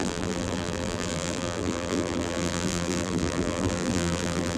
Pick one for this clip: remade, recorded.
remade